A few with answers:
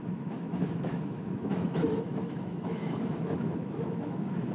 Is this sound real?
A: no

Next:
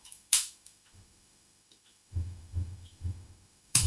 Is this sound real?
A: no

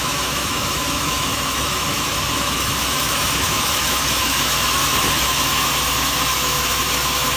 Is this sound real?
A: no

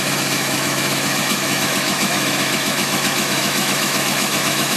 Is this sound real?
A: no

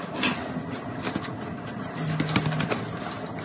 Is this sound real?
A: yes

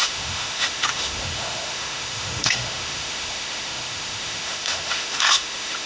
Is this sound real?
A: no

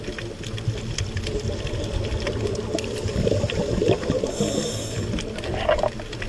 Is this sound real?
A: yes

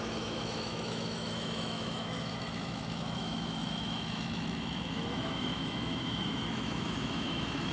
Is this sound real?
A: no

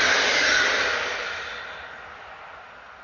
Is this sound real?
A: yes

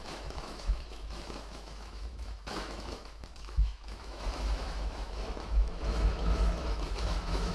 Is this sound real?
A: no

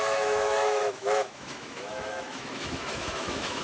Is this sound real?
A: no